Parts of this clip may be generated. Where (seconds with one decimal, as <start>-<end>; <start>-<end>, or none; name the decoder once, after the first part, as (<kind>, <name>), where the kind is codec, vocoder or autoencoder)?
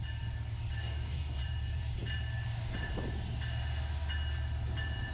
0.8-1.4 (codec, DAC)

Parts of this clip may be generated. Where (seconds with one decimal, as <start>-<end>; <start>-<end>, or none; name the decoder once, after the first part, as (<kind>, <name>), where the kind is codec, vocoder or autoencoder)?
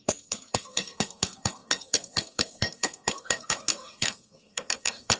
0.0-5.2 (codec, SNAC)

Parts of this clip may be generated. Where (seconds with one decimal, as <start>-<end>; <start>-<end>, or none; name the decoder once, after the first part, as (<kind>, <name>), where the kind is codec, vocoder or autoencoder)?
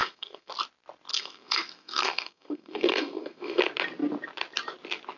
0.0-0.5 (codec, SNAC); 1.1-3.6